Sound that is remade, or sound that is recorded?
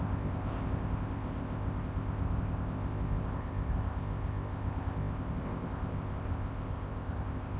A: remade